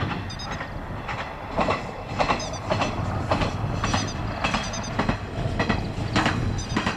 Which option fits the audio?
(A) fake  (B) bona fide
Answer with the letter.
B